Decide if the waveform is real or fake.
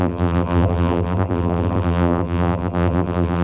fake